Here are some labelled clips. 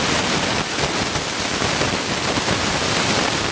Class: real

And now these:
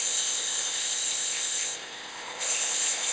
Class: fake